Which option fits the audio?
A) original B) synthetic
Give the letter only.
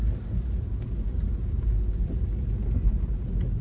A